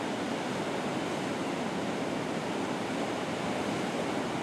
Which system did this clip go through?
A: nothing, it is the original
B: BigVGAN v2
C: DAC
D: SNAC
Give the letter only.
A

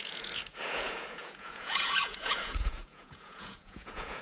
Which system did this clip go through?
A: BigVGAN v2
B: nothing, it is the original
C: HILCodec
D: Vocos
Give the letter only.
D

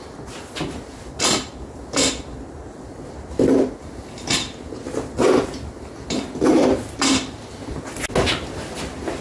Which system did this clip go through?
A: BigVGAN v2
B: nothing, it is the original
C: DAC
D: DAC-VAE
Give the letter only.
B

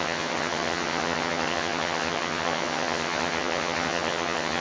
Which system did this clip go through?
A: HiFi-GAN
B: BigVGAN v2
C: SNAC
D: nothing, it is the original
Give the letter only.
A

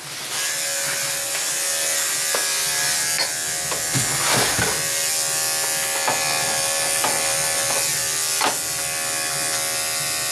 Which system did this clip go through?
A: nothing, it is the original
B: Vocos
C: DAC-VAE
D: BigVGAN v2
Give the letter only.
A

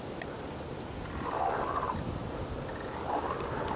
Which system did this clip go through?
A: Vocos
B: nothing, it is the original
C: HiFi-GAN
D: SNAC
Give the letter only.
B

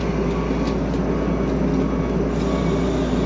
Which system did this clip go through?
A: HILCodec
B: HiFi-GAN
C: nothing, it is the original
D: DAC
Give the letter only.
C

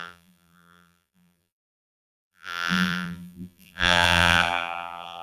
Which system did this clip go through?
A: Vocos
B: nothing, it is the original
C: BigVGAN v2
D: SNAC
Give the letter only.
C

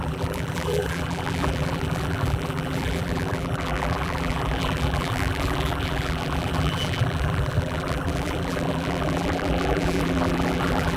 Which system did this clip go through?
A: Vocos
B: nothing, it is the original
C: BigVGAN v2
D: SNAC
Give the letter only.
C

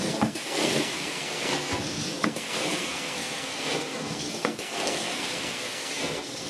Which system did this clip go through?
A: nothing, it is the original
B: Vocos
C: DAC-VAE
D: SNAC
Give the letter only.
D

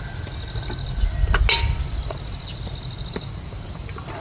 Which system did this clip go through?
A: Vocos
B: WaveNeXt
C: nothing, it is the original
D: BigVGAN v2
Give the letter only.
C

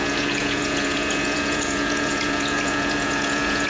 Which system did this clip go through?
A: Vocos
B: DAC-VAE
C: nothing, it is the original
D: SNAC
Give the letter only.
A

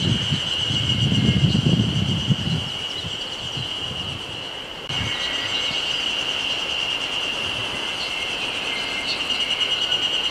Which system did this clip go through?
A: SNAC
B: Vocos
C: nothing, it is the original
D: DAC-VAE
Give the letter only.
C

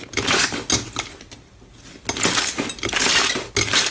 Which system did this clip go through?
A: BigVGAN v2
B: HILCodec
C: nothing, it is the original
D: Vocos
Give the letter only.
C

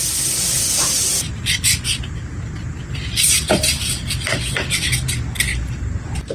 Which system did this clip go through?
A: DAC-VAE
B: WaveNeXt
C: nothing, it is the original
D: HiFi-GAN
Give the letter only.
C